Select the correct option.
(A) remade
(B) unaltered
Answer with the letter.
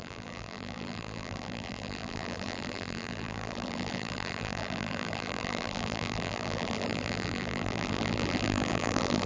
A